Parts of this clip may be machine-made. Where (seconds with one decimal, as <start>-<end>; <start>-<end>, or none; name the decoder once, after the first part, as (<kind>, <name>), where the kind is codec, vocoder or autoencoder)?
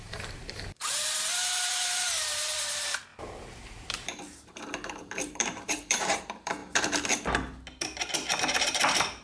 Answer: 0.0-6.6 (vocoder, BigVGAN v2); 8.4-9.2